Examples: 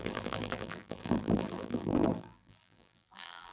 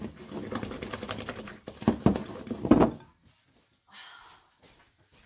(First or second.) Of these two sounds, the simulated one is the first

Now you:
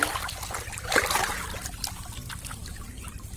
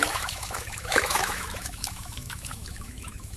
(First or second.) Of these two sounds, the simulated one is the second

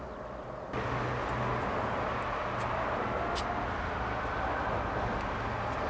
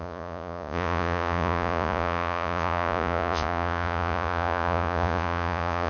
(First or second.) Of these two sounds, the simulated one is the second